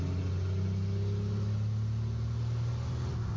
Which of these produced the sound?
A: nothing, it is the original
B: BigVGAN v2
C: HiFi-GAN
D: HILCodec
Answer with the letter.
A